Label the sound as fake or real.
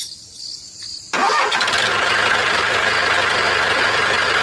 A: real